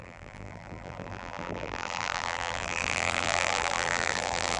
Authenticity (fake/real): fake